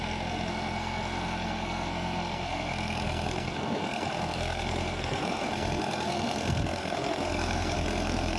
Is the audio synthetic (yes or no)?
yes